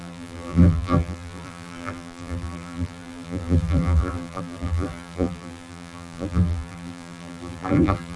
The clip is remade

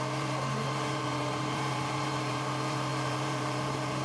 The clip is remade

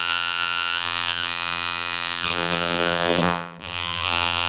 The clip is remade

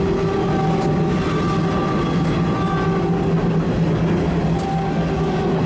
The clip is recorded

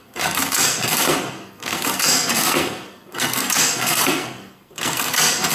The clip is remade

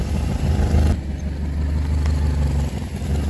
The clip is recorded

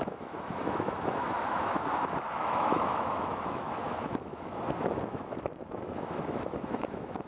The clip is remade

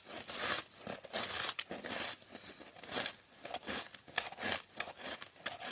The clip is recorded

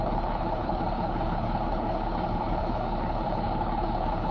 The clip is remade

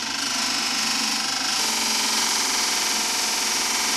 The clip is recorded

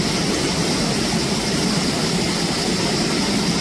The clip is recorded